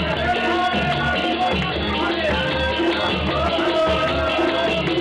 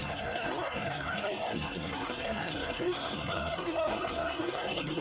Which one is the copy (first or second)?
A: second